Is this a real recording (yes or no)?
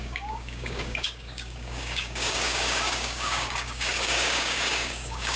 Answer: no